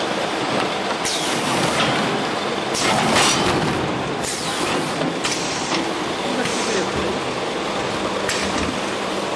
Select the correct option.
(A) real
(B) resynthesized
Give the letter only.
B